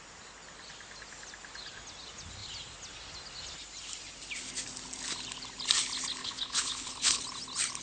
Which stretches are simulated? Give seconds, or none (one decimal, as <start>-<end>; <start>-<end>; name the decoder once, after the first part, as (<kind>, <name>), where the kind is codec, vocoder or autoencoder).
6.2-7.2 (codec, HILCodec)